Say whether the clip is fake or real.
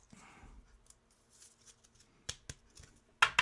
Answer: real